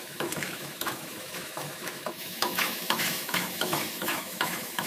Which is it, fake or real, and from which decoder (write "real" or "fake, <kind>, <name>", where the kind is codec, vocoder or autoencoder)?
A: fake, autoencoder, DAC-VAE